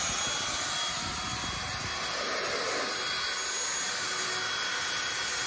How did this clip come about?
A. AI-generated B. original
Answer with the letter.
B